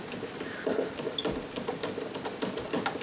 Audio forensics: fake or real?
real